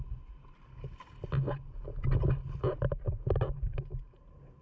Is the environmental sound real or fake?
real